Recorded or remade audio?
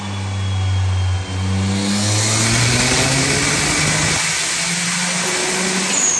recorded